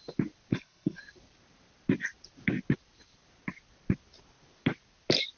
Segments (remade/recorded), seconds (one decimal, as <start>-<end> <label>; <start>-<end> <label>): 0.0-0.5 recorded; 0.5-1.0 remade; 1.0-5.4 recorded